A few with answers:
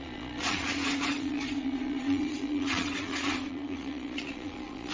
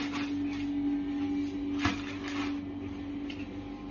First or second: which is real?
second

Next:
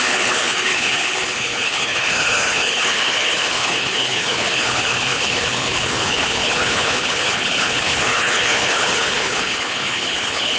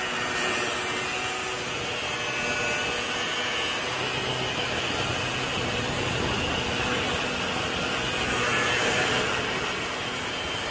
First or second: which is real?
second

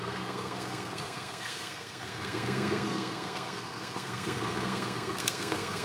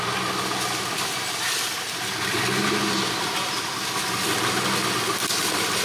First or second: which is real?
second